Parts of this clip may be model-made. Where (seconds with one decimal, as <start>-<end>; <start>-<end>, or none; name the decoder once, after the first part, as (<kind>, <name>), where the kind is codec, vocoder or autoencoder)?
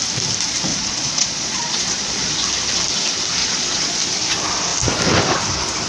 0.7-2.3 (vocoder, Vocos); 3.4-4.0